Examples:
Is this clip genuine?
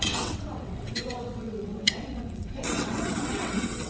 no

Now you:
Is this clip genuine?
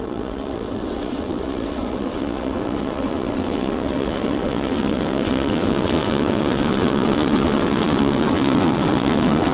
no